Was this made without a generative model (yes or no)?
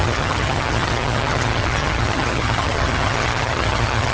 no